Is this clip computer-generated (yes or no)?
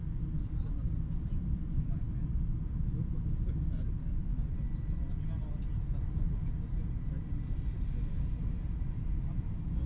no